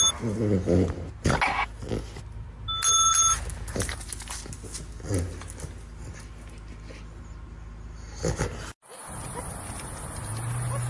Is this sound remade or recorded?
recorded